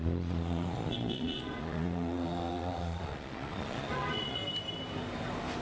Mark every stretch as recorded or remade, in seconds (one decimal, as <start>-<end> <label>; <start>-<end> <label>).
0.0-4.4 remade; 4.4-5.6 recorded